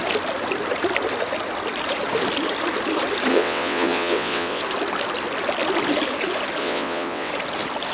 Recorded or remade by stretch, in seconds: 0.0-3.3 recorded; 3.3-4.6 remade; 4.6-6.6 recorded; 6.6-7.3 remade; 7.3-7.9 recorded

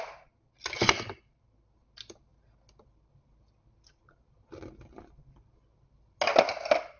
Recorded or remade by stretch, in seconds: 0.0-7.0 recorded

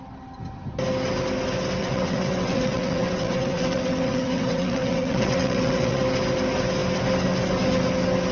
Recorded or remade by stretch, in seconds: 0.0-1.8 recorded; 1.8-6.0 remade; 6.0-8.3 recorded

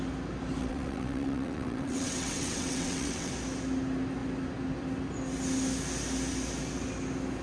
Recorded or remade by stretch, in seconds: 0.0-0.6 recorded; 0.6-3.3 remade; 3.3-7.4 recorded

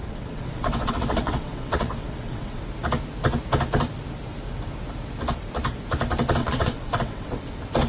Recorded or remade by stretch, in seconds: 0.0-2.6 remade; 2.6-6.4 recorded; 6.4-7.4 remade; 7.4-7.9 recorded

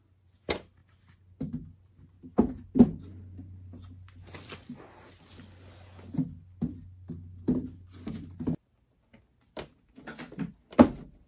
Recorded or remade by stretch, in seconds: 0.0-11.3 recorded